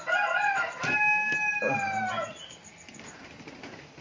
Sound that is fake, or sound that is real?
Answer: real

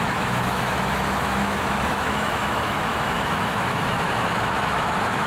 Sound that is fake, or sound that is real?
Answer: fake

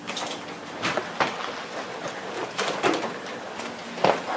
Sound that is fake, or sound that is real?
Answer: real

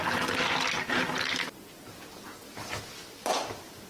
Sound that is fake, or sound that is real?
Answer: real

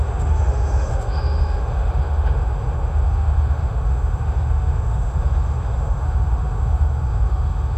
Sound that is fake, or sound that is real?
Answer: fake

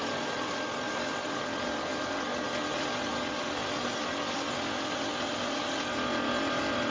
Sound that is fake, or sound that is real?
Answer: real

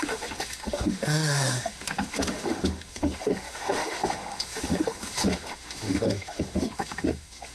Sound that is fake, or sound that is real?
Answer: fake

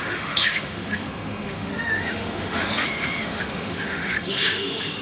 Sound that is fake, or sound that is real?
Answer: fake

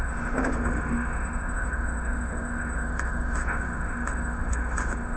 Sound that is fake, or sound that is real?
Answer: fake